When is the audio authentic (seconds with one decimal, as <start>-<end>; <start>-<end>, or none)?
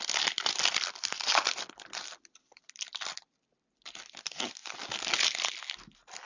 4.6-6.3